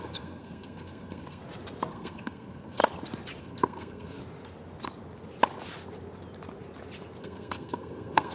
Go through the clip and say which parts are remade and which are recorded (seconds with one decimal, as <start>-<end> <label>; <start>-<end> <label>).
0.0-1.4 remade; 1.4-1.9 recorded; 1.9-2.8 remade; 2.8-3.4 recorded; 3.4-4.2 remade; 4.2-7.2 recorded; 7.2-8.3 remade